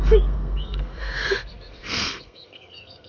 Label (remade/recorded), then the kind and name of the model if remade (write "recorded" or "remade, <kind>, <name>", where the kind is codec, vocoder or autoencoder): remade, codec, SNAC